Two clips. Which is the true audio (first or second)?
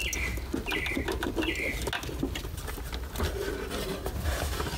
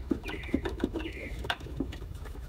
first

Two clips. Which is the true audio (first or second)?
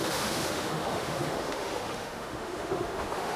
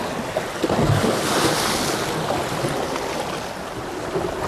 second